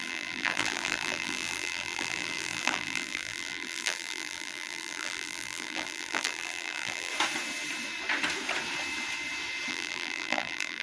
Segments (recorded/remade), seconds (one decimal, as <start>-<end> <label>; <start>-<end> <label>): 0.0-7.1 remade; 7.1-9.7 recorded; 9.7-10.8 remade